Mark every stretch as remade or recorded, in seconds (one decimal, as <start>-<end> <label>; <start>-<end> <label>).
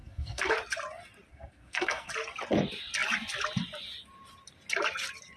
0.0-0.5 remade; 0.5-1.3 recorded; 1.3-2.1 remade; 2.1-5.4 recorded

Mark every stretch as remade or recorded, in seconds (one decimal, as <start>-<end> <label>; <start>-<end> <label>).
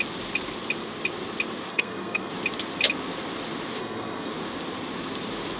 0.0-1.7 recorded; 1.7-2.3 remade; 2.3-3.8 recorded; 3.8-4.3 remade; 4.3-5.6 recorded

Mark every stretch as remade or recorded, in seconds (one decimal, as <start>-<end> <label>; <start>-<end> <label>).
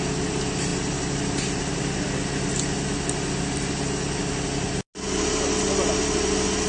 0.0-6.7 recorded